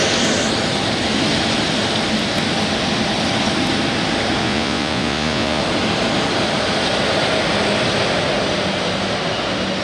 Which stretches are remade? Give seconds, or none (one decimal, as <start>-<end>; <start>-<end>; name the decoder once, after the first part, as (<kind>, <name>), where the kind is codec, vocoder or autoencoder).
4.4-5.6 (vocoder, Vocos)